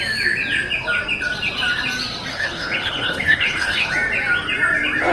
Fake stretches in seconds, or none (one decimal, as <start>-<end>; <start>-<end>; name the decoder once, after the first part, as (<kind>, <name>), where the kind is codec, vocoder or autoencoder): 2.3-3.9 (codec, HILCodec)